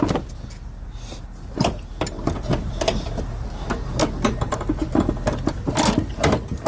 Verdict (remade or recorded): recorded